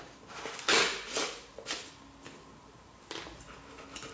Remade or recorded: recorded